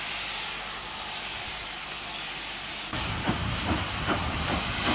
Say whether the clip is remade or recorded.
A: remade